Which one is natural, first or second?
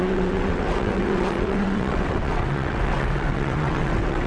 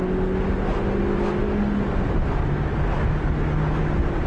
second